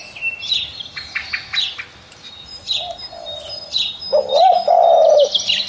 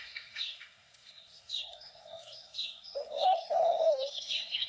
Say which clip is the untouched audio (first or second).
first